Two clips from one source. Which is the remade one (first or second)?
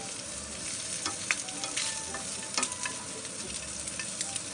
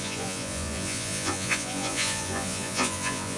second